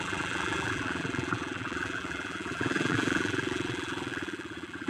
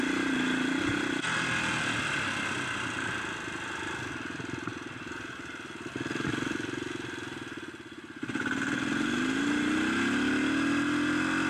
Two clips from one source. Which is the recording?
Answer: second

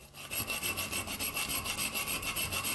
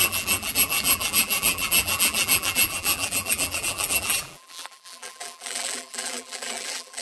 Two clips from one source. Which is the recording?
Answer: first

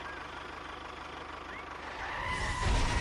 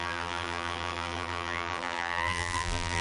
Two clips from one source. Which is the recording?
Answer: first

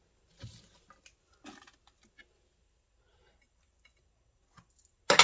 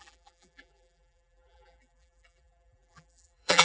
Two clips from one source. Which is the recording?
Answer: first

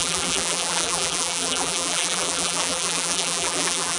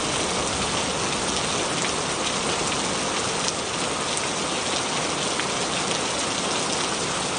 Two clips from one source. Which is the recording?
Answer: second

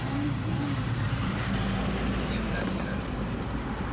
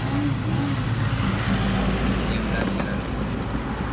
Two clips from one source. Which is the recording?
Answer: second